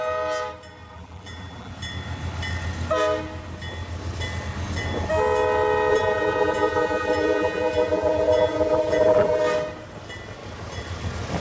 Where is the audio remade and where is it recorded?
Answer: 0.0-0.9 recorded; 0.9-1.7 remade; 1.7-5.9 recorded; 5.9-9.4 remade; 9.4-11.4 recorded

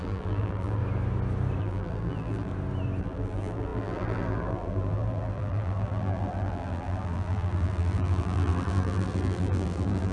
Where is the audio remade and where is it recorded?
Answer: 0.0-0.8 remade; 0.8-1.6 recorded; 1.6-2.5 remade; 2.5-3.0 recorded; 3.0-10.1 remade

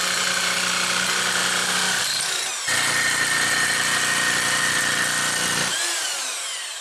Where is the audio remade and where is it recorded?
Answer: 0.0-6.8 recorded

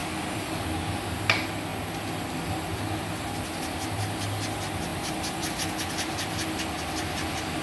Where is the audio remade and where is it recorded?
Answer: 0.0-0.6 remade; 0.6-4.9 recorded; 4.9-5.5 remade; 5.5-7.6 recorded

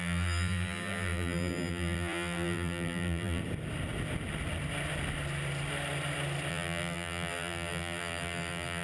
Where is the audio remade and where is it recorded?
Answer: 0.0-3.4 remade; 3.4-6.5 recorded; 6.5-8.8 remade